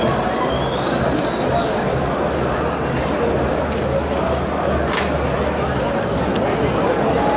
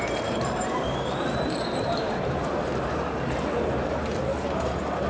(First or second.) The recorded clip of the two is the first